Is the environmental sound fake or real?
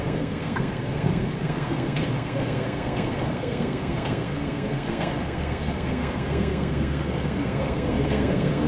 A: fake